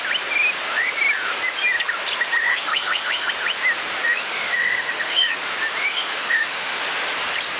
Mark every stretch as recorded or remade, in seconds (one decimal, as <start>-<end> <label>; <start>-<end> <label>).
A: 0.0-2.5 recorded; 2.5-3.3 remade; 3.3-4.0 recorded; 4.0-5.3 remade; 5.3-5.8 recorded; 5.8-6.8 remade; 6.8-7.6 recorded